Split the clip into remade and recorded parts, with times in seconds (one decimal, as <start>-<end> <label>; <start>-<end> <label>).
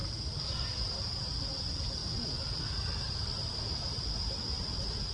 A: 0.0-5.1 recorded